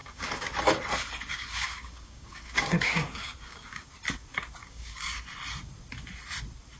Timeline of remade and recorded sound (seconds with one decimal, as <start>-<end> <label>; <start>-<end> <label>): 0.0-0.5 remade; 0.5-1.3 recorded; 1.3-3.9 remade; 3.9-4.6 recorded; 4.6-5.2 remade; 5.2-6.8 recorded